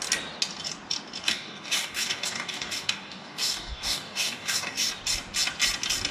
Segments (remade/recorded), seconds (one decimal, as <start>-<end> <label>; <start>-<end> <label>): 0.0-1.2 recorded; 1.2-4.9 remade; 4.9-6.1 recorded